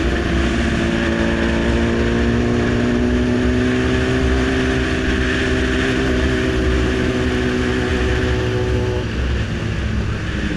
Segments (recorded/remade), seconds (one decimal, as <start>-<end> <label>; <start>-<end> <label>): 0.0-10.6 recorded